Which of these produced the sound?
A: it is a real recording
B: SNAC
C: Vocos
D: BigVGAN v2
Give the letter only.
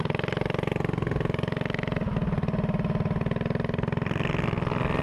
A